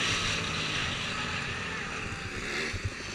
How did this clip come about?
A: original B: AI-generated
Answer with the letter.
A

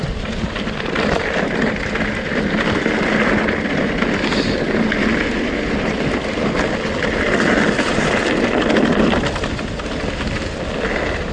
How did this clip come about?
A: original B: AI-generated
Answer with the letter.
A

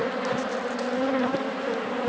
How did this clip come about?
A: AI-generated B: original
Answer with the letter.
B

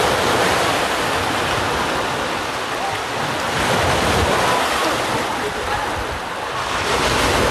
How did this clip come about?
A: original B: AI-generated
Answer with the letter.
A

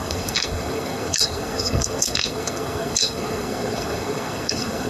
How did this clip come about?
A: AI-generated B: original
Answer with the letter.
A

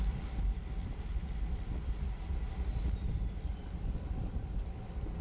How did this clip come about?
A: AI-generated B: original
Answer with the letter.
B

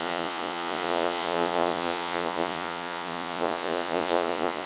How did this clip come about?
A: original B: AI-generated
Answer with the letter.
B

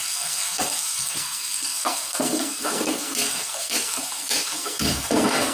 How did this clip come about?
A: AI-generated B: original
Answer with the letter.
A